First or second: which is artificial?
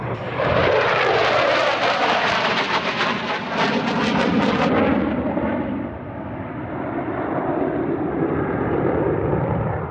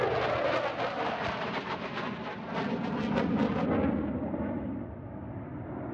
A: first